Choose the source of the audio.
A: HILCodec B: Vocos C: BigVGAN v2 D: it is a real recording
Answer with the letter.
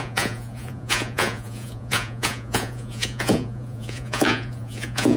B